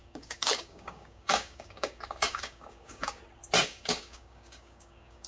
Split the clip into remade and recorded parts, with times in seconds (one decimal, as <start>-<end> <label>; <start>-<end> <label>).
0.0-3.2 remade; 3.2-3.6 recorded; 3.6-5.3 remade